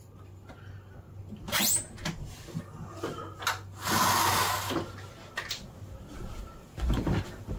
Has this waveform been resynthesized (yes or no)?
no